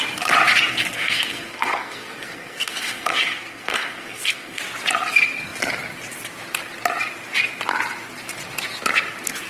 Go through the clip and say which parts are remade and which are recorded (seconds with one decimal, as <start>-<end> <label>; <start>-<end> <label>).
0.0-0.7 recorded; 0.7-4.6 remade; 4.6-9.5 recorded